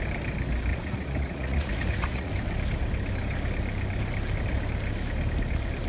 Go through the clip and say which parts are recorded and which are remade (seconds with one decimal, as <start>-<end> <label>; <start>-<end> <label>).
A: 0.0-0.7 recorded; 0.7-2.3 remade; 2.3-5.9 recorded